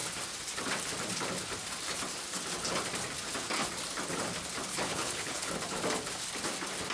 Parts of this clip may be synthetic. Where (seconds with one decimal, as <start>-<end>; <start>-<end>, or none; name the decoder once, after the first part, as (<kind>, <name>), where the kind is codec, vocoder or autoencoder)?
4.7-5.5 (codec, HILCodec)